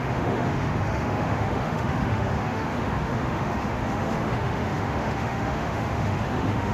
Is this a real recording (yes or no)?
no